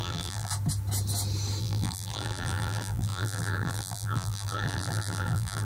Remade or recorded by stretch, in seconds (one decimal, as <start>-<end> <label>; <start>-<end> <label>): 0.0-0.5 remade; 0.5-1.6 recorded; 1.6-5.6 remade